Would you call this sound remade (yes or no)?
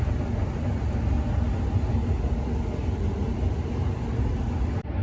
no